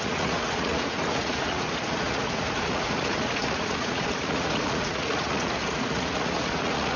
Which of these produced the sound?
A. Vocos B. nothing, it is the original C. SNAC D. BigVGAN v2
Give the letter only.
A